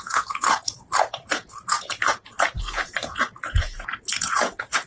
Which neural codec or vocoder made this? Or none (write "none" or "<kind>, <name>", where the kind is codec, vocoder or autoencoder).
vocoder, Vocos